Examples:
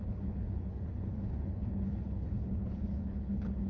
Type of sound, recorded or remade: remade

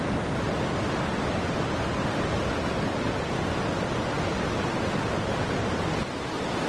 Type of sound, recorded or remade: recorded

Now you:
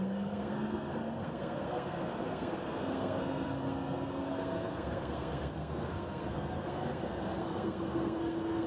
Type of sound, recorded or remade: remade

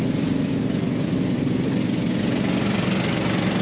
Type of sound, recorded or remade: remade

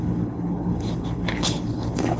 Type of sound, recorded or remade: remade